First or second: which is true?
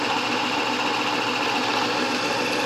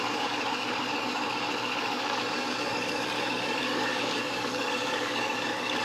first